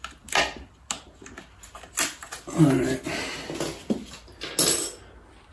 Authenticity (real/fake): real